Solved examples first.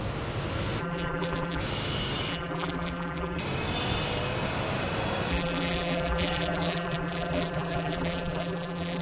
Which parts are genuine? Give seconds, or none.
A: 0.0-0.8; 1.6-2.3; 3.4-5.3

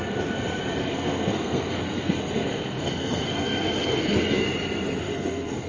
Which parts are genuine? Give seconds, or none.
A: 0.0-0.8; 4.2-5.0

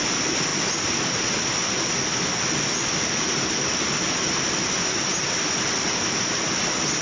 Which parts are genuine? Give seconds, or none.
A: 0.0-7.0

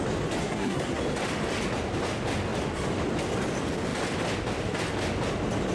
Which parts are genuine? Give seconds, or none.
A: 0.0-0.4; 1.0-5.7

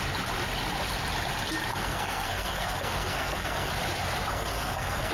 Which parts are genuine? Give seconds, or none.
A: 0.0-1.7; 3.7-4.3